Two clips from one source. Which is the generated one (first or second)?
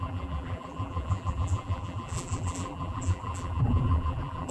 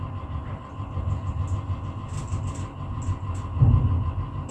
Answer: first